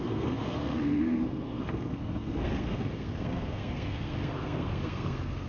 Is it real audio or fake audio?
fake